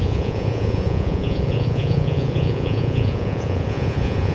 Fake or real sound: fake